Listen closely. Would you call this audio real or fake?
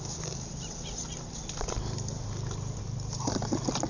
real